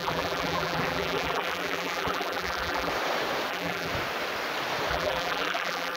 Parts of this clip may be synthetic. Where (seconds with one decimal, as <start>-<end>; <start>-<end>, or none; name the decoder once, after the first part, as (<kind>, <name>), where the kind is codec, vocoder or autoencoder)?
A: 0.0-2.9 (vocoder, BigVGAN v2); 3.5-3.9; 4.9-6.0